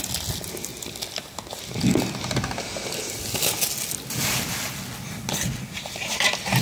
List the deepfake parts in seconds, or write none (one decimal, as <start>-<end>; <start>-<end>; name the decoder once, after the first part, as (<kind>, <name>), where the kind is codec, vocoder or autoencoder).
none